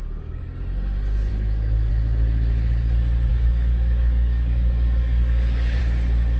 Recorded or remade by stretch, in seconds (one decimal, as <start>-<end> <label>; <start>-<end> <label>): 0.0-1.3 recorded; 1.3-1.9 remade; 1.9-3.3 recorded; 3.3-5.8 remade; 5.8-6.4 recorded